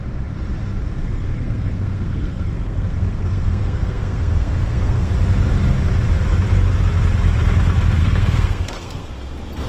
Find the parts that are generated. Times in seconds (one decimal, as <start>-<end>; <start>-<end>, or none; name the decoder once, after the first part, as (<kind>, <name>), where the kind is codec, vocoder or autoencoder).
1.0-5.1 (codec, SNAC); 8.0-9.1